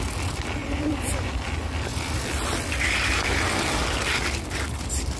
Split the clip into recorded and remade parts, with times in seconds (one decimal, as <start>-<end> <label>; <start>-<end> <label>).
0.0-0.6 recorded; 0.6-1.3 remade; 1.3-5.2 recorded